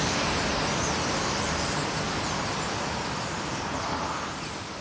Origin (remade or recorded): recorded